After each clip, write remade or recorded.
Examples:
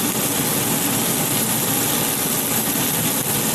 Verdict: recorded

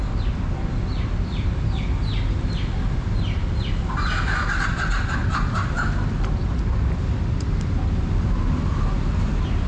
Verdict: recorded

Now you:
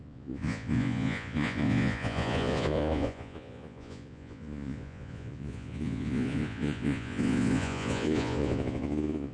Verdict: remade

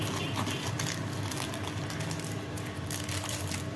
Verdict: recorded